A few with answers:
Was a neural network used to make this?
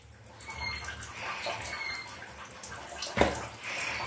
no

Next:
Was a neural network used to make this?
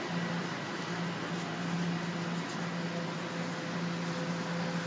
no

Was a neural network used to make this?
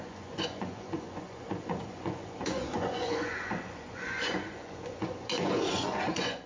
yes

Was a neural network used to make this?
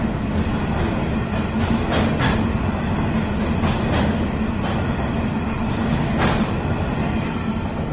no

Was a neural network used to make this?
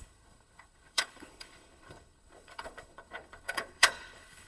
yes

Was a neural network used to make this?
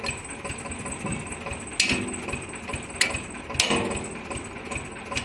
no